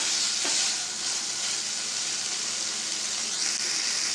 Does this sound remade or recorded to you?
recorded